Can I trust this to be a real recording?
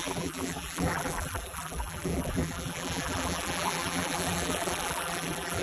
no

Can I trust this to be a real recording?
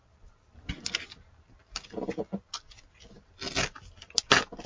yes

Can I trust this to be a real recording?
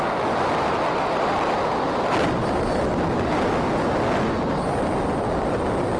yes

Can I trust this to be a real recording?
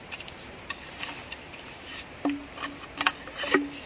no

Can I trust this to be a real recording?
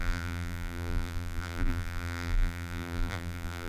no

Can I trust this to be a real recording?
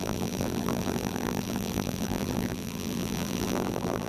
no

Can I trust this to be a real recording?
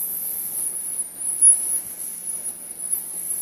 yes